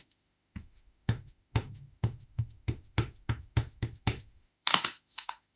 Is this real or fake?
fake